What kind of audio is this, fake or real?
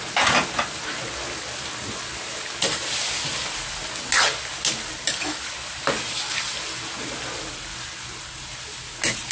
real